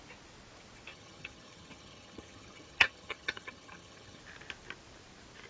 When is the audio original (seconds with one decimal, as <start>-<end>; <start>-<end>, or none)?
0.0-0.9; 4.2-5.5